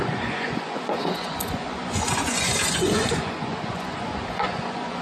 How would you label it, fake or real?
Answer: fake